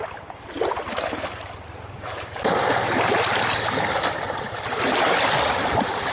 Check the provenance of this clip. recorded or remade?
recorded